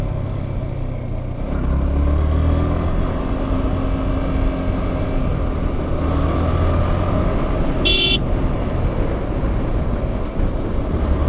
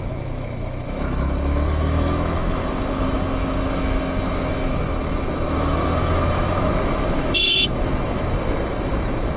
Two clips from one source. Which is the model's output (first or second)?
second